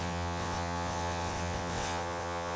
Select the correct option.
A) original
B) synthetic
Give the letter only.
B